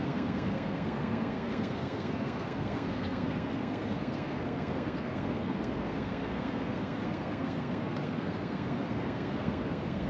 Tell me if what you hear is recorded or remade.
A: remade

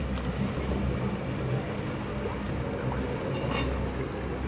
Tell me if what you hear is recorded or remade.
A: recorded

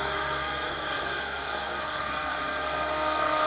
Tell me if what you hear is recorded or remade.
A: remade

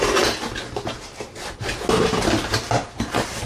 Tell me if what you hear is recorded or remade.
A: recorded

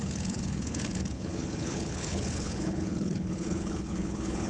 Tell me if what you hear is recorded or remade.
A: remade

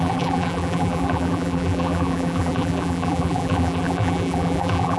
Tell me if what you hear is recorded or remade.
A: remade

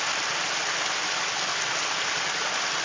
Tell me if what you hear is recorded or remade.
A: recorded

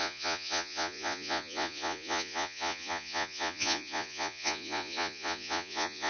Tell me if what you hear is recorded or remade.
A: remade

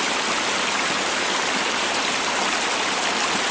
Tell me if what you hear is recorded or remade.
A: recorded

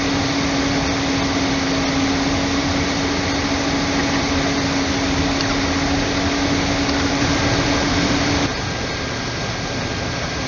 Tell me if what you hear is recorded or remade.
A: recorded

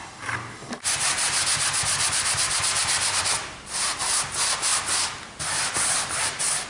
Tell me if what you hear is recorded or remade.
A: recorded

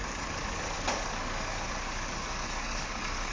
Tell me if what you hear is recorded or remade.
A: remade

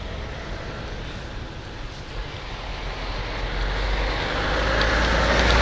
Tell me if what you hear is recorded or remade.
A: recorded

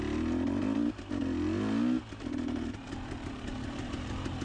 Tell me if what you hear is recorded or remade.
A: recorded